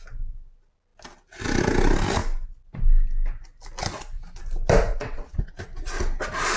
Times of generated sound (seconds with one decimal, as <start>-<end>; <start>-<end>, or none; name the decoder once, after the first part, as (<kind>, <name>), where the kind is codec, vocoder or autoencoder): 4.9-5.6 (vocoder, WaveNeXt)